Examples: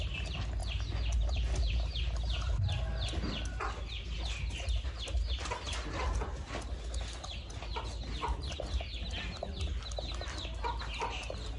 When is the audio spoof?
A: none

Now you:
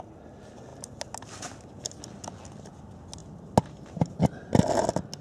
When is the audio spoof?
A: none

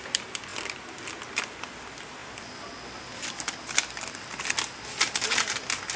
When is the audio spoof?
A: none

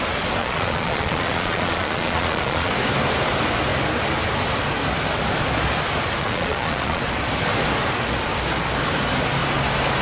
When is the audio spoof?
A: 0.4-2.7; 6.2-7.0